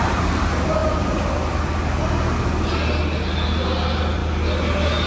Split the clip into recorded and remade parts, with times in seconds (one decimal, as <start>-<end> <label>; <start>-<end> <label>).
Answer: 0.0-5.1 recorded